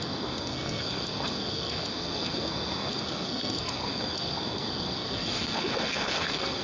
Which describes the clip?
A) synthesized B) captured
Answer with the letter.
A